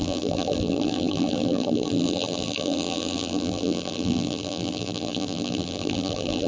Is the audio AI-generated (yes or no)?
yes